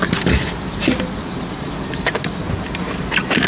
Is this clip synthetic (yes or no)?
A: no